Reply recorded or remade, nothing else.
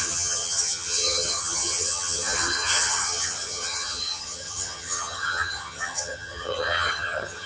remade